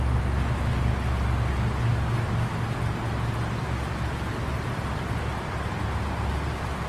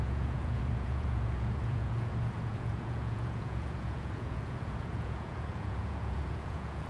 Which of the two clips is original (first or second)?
first